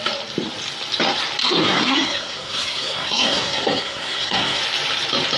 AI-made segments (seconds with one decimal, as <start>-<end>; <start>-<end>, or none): 1.4-4.6